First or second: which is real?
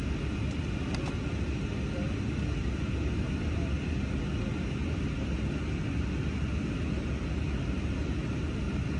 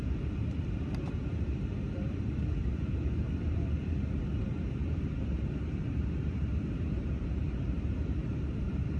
first